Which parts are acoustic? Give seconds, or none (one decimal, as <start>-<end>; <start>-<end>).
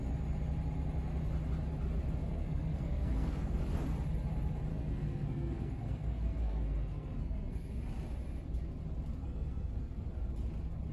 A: 0.0-2.2; 3.6-4.7; 7.7-9.2; 10.0-10.9